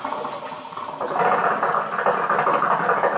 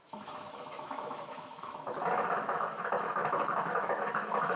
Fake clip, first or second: second